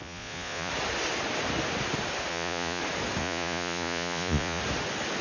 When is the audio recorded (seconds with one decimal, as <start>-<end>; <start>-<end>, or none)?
0.7-2.3; 2.8-3.2; 4.6-5.2